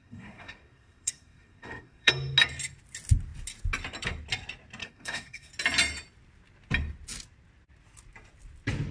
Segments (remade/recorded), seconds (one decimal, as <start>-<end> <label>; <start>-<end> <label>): 0.0-2.1 remade; 2.1-4.8 recorded; 4.8-5.5 remade; 5.5-8.9 recorded